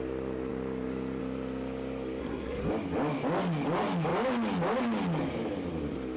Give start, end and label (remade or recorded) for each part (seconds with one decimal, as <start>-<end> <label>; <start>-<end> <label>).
0.0-2.2 recorded; 2.2-2.7 remade; 2.7-6.2 recorded